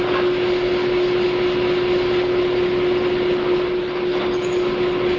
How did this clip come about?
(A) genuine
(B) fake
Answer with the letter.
A